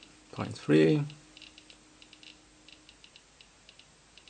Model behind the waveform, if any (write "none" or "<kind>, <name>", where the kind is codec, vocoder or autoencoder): none